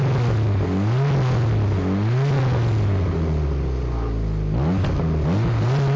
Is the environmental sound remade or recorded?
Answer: recorded